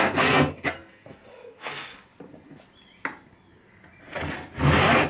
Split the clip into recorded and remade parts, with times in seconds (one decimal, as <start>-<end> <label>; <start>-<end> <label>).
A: 0.0-1.9 remade; 1.9-5.1 recorded